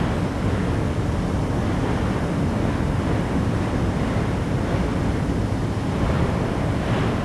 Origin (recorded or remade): recorded